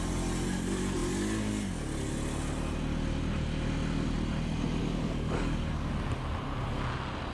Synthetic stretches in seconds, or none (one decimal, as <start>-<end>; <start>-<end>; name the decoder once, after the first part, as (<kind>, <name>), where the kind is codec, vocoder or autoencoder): 4.8-5.9 (codec, DAC)